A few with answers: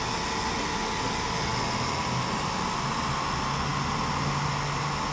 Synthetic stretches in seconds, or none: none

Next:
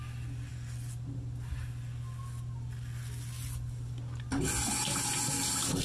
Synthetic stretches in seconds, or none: none

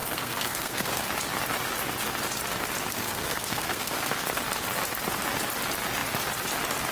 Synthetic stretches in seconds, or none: 0.0-1.1 (codec, SNAC); 2.9-4.4